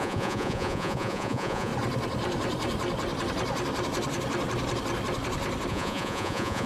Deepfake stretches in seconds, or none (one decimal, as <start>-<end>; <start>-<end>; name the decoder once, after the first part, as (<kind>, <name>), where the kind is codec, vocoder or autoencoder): 0.0-1.7 (vocoder, Vocos); 5.7-6.7